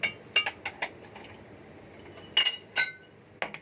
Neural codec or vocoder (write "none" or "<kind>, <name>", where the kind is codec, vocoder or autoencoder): none